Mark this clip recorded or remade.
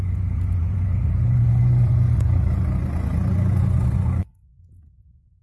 remade